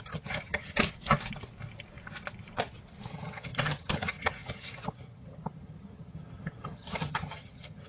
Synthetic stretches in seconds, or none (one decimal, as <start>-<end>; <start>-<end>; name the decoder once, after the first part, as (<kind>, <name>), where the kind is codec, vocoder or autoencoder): 0.0-0.8 (vocoder, HiFi-GAN); 3.1-7.9

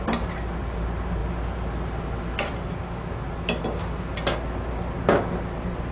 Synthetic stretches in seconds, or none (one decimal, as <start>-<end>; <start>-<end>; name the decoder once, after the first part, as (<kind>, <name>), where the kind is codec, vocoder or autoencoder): none

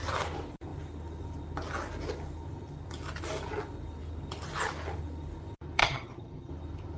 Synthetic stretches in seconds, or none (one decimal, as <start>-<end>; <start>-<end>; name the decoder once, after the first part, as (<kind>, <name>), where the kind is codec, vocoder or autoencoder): 5.8-6.5 (vocoder, HiFi-GAN)